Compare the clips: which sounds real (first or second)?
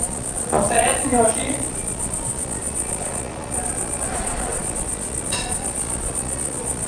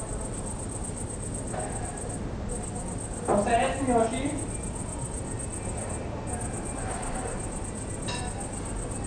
second